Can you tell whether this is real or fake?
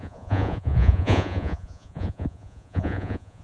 fake